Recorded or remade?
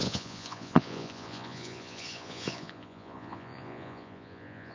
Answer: remade